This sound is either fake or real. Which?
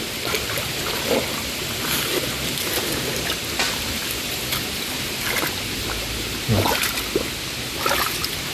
real